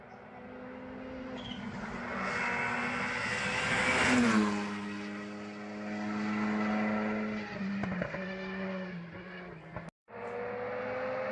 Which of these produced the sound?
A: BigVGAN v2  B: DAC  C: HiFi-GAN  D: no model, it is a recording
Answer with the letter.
D